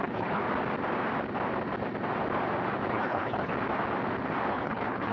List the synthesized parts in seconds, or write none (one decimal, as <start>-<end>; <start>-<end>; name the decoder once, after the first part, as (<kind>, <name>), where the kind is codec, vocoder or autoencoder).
0.0-0.4 (codec, HILCodec); 2.9-3.5; 4.5-5.1

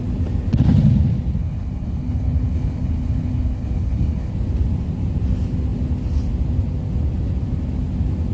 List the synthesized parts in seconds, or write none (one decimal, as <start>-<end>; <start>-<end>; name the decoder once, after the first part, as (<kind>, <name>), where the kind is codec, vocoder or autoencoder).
1.4-4.3 (codec, HILCodec)

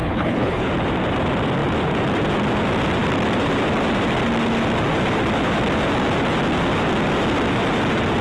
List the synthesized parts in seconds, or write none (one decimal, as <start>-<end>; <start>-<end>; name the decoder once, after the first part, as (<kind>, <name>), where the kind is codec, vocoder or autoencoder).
0.0-0.7 (codec, HILCodec)